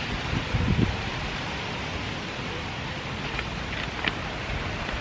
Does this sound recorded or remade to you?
recorded